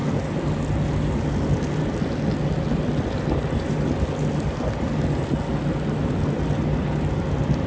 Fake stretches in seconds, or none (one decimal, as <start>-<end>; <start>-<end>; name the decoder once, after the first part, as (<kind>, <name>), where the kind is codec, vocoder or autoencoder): none